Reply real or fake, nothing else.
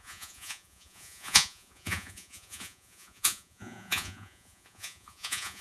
fake